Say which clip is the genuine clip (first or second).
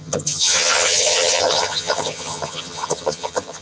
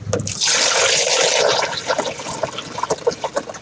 second